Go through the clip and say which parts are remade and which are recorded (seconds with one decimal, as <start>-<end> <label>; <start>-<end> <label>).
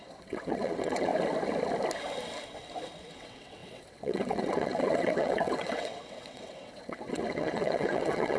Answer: 0.0-1.1 remade; 1.1-3.1 recorded; 3.1-8.4 remade